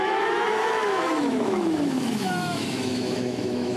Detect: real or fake fake